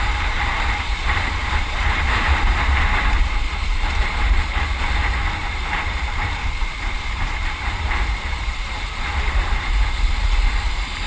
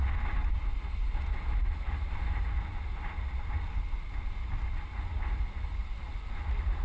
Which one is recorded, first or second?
second